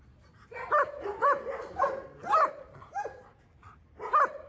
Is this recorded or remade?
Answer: recorded